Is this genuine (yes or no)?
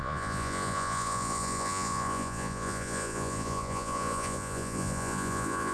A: no